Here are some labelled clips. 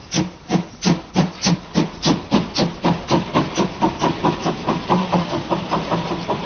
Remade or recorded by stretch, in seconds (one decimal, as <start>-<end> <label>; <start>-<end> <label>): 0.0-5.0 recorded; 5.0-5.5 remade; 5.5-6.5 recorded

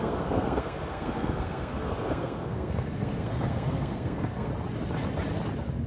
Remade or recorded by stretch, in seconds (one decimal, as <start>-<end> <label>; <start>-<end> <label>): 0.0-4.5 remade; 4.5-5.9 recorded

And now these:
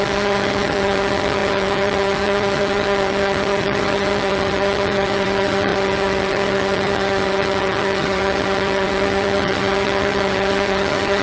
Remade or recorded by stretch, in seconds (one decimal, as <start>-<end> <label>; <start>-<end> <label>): 0.0-11.2 remade

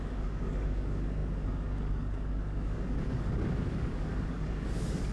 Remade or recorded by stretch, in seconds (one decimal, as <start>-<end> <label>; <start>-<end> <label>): 0.0-5.1 remade

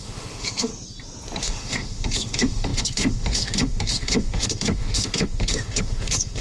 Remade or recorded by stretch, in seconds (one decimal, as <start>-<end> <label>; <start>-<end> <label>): 0.0-0.7 remade; 0.7-1.4 recorded; 1.4-6.4 remade